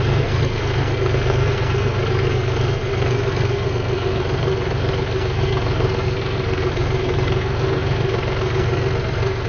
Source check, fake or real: fake